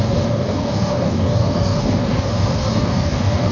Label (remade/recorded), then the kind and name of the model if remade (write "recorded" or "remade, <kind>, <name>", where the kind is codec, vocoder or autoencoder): remade, codec, DAC